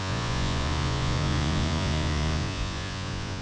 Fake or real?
fake